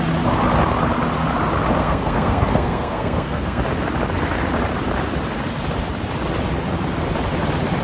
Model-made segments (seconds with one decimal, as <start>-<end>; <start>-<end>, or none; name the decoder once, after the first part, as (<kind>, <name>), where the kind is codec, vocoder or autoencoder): 1.8-3.6 (codec, SNAC)